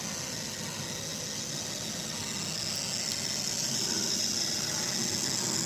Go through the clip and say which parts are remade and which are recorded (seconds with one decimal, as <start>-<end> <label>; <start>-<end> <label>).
0.0-3.6 recorded; 3.6-4.9 remade; 4.9-5.7 recorded